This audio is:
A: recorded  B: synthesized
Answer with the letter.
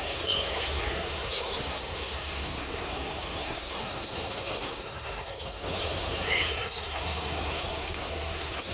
B